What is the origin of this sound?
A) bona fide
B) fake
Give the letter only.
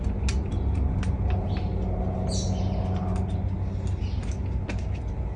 A